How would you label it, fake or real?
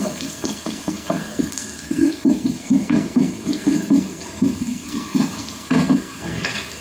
fake